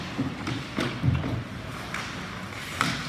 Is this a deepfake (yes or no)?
no